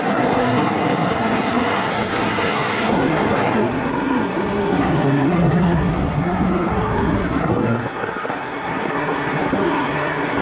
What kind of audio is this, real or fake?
fake